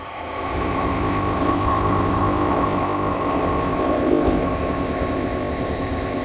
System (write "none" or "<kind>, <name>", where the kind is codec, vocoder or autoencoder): codec, ZipCodec